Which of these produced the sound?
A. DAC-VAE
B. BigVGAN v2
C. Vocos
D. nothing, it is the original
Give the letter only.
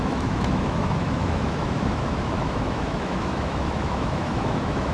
A